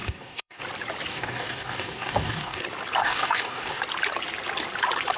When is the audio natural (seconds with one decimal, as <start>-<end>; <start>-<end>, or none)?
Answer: 0.6-1.1; 2.6-3.0; 3.8-5.2

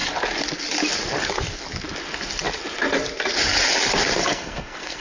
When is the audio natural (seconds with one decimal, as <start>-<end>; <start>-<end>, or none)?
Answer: 0.0-4.2